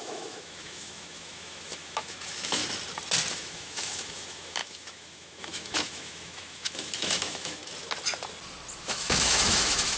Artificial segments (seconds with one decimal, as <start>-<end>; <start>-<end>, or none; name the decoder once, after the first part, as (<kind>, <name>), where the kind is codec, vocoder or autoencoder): 0.0-2.6 (autoencoder, DAC-VAE); 3.3-7.6; 8.8-10.0